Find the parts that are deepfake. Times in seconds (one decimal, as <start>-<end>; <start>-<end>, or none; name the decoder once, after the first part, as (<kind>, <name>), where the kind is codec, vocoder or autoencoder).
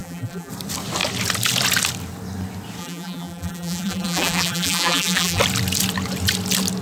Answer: 0.0-0.5 (vocoder, BigVGAN v2); 2.8-5.4